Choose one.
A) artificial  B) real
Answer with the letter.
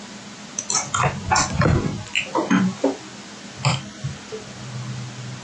B